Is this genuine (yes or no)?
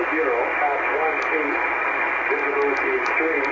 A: yes